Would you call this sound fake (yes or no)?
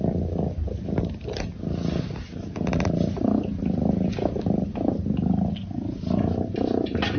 no